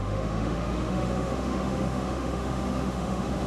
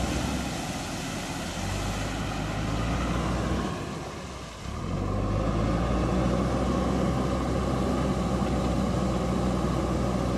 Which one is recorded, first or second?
second